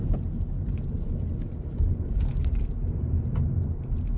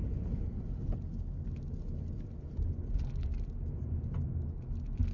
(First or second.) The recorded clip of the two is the second